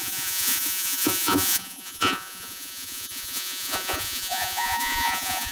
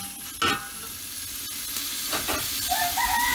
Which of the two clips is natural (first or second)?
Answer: second